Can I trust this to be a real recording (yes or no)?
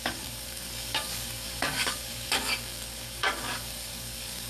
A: no